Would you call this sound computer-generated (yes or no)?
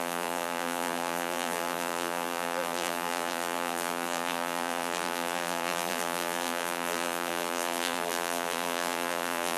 yes